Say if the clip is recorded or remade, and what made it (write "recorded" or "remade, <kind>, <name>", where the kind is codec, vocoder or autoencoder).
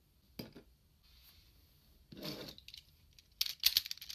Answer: recorded